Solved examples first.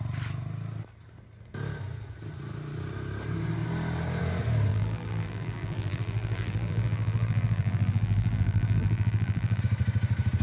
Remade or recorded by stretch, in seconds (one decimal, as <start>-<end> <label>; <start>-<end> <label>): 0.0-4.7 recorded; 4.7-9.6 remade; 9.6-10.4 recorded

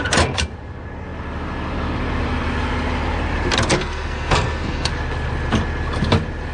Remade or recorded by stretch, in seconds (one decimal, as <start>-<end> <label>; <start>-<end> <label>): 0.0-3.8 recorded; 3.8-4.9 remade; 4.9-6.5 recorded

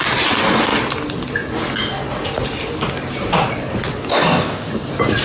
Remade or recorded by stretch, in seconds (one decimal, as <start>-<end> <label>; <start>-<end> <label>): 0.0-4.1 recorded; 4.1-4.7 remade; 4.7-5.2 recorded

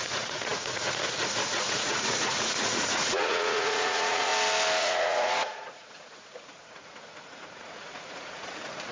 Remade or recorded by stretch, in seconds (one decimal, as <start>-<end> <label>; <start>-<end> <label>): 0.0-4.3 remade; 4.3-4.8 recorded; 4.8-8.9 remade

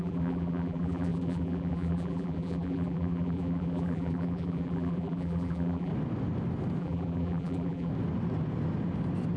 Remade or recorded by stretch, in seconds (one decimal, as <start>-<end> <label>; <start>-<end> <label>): 0.0-5.9 remade; 5.9-6.8 recorded; 6.8-7.9 remade; 7.9-9.4 recorded